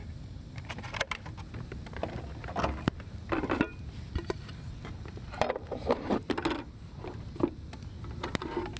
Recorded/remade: recorded